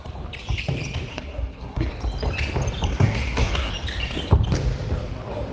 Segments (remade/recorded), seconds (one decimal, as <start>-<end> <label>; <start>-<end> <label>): 0.0-1.1 recorded; 1.1-1.9 remade; 1.9-2.9 recorded; 2.9-3.7 remade; 3.7-5.5 recorded